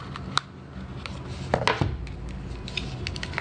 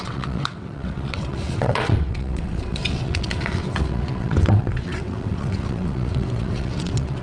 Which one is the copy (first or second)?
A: second